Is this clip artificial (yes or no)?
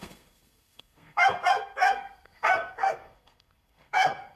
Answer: yes